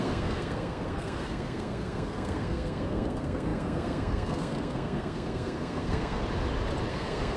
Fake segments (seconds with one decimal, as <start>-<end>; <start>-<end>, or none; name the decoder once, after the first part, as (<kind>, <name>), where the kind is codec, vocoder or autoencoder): 0.0-6.2 (codec, SNAC); 6.9-7.4